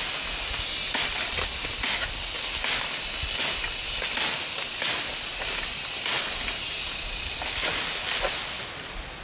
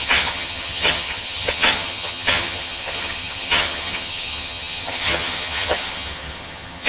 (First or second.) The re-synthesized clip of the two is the second